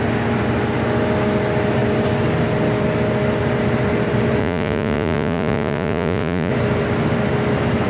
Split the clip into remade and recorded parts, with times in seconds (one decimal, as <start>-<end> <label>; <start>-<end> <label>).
0.0-4.4 recorded; 4.4-6.5 remade; 6.5-7.9 recorded